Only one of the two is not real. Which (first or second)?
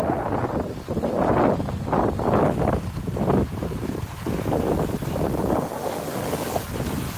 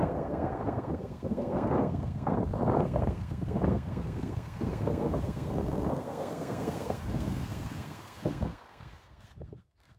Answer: second